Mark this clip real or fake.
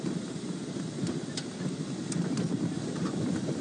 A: real